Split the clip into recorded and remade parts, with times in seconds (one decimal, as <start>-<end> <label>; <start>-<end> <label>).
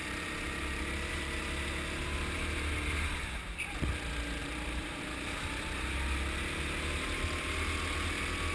0.0-4.4 recorded; 4.4-5.0 remade; 5.0-8.5 recorded